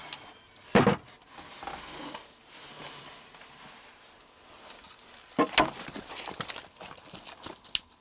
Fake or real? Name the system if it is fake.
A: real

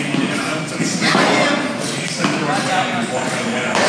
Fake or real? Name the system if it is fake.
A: real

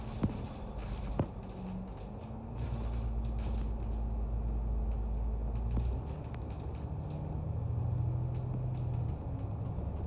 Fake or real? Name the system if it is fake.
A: real